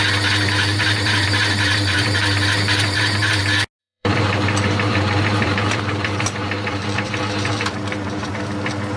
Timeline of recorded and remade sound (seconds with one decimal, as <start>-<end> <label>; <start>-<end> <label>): 0.0-0.7 recorded; 0.7-3.4 remade; 3.4-3.8 recorded; 3.8-8.3 remade; 8.3-9.0 recorded

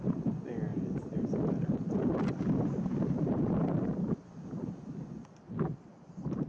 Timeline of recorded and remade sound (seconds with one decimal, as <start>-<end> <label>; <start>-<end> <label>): 0.0-6.5 recorded

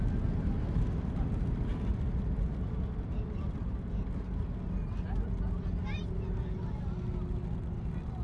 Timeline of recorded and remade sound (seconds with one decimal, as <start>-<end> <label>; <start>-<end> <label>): 0.0-1.9 recorded; 1.9-3.9 remade; 3.9-8.2 recorded

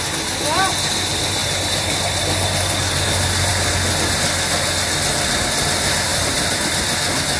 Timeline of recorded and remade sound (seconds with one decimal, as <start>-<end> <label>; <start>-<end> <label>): 0.0-1.4 recorded; 1.4-3.5 remade; 3.5-6.1 recorded; 6.1-6.8 remade; 6.8-7.4 recorded